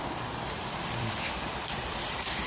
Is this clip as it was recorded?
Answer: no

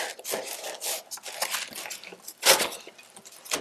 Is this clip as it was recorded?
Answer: yes